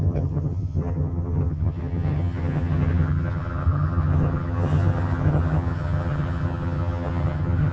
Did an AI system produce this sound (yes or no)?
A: yes